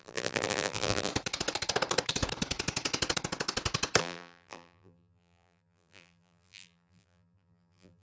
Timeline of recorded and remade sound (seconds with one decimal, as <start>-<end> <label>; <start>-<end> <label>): 0.0-1.1 remade; 1.1-4.0 recorded; 4.0-8.0 remade